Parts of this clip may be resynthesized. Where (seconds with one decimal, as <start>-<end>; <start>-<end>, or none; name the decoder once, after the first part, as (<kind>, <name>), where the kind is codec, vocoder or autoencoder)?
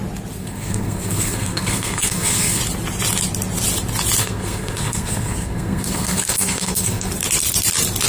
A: 0.4-2.6 (codec, SNAC); 4.2-7.1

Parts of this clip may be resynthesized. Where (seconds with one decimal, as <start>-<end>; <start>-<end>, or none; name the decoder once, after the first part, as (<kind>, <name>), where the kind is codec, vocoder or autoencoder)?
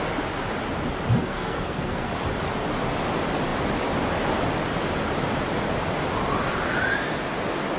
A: 1.2-2.1 (codec, SNAC)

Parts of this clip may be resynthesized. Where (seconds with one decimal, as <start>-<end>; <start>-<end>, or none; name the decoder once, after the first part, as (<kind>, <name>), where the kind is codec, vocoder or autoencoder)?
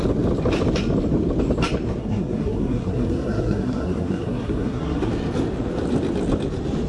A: 2.0-5.1 (codec, SNAC)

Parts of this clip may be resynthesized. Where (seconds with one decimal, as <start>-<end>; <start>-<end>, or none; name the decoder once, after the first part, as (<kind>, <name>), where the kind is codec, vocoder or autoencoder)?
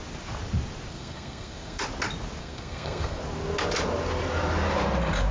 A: 0.9-1.8 (codec, SNAC); 2.4-3.2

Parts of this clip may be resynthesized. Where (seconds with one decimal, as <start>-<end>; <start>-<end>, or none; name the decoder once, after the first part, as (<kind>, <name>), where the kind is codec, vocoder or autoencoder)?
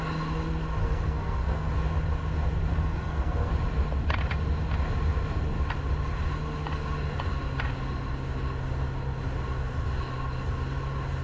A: 0.8-1.7 (codec, SNAC); 2.7-3.5